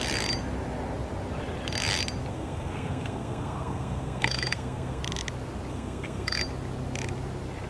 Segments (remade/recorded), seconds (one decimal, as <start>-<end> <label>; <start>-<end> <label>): 0.0-2.3 recorded; 2.3-5.0 remade; 5.0-5.7 recorded; 5.7-6.4 remade; 6.4-7.7 recorded

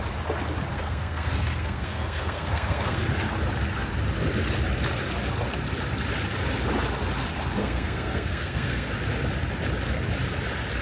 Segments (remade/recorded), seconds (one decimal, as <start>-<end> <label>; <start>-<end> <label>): 0.0-0.7 recorded; 0.7-3.0 remade; 3.0-7.6 recorded; 7.6-8.9 remade; 8.9-10.8 recorded

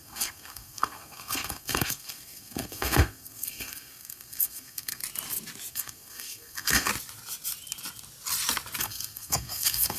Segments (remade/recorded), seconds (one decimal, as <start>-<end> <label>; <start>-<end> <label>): 0.0-5.0 remade; 5.0-5.7 recorded; 5.7-6.9 remade; 6.9-8.8 recorded; 8.8-10.0 remade